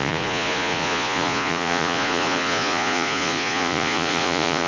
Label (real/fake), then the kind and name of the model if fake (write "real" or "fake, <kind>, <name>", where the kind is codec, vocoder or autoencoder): fake, vocoder, Vocos